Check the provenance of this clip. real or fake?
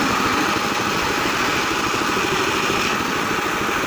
real